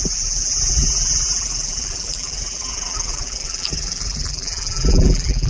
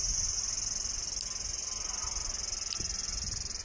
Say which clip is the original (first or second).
second